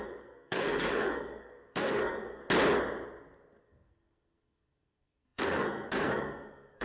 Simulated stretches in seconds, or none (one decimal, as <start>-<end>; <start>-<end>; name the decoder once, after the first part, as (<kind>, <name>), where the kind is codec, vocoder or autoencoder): 0.0-2.4 (codec, SNAC); 3.6-6.8